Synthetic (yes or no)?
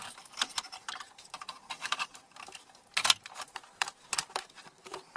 yes